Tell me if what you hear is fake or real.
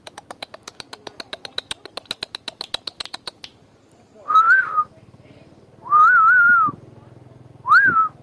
real